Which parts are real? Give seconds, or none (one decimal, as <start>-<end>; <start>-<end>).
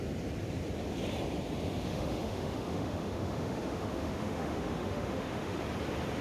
0.0-1.9; 5.6-6.2